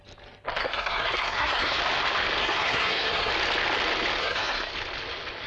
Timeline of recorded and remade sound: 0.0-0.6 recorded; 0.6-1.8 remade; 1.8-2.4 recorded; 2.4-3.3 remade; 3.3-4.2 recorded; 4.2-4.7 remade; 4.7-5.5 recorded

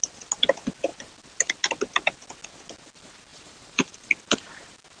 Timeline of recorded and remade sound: 0.0-3.3 recorded; 3.3-4.1 remade; 4.1-5.0 recorded

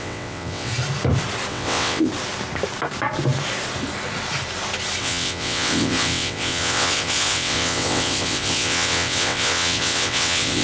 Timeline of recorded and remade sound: 0.0-0.7 remade; 0.7-1.5 recorded; 1.5-2.1 remade; 2.1-5.0 recorded; 5.0-10.6 remade

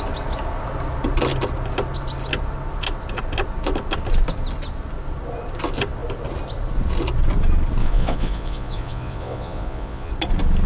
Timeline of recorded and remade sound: 0.0-7.8 recorded; 7.8-10.1 remade; 10.1-10.7 recorded